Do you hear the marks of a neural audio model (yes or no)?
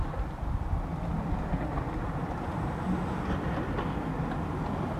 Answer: no